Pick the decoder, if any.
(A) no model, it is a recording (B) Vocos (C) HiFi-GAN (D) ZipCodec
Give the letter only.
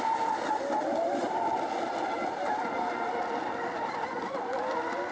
A